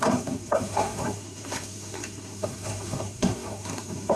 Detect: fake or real fake